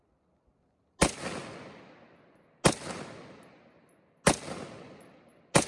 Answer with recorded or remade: recorded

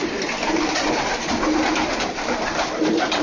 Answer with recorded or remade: recorded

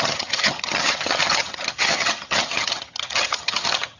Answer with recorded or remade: remade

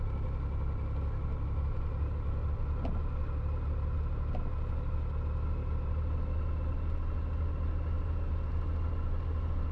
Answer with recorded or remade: recorded